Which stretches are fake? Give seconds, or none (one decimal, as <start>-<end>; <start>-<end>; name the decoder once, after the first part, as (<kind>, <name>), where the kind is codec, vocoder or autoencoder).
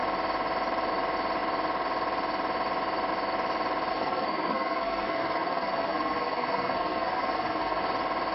3.9-7.8 (codec, SNAC)